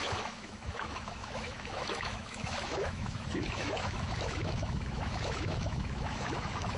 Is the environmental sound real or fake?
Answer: fake